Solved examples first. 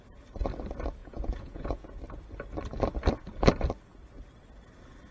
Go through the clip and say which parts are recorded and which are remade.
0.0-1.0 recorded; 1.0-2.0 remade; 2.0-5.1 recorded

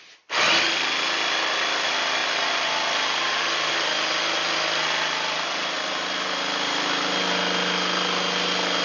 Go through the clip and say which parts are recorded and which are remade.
0.0-8.8 recorded

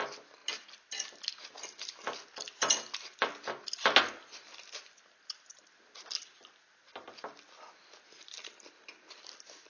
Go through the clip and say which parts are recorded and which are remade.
0.0-9.7 recorded

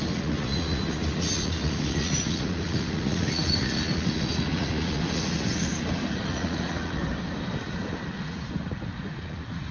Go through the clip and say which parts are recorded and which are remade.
0.0-7.0 remade; 7.0-7.6 recorded; 7.6-9.7 remade

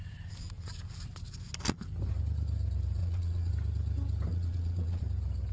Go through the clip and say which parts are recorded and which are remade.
0.0-3.0 recorded; 3.0-3.5 remade; 3.5-4.3 recorded; 4.3-5.0 remade; 5.0-5.5 recorded

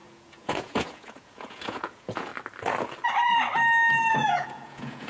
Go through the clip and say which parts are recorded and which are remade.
0.0-2.3 remade; 2.3-4.1 recorded; 4.1-5.1 remade

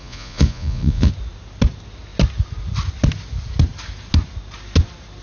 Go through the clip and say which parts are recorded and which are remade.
0.0-1.1 remade; 1.1-5.2 recorded